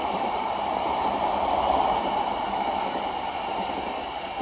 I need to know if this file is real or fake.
fake